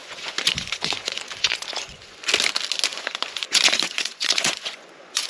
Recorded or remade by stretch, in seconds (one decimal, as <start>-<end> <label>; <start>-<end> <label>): 0.0-2.3 remade; 2.3-2.9 recorded; 2.9-5.3 remade